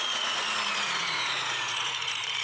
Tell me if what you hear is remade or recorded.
remade